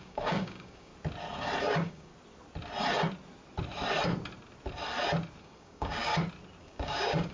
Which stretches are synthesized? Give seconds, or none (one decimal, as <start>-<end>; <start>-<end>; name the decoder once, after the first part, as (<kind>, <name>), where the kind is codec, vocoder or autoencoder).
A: 0.0-0.9 (codec, DAC); 1.6-2.1; 5.4-6.1; 6.6-7.3